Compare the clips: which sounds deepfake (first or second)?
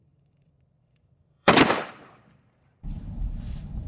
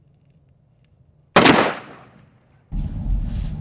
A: first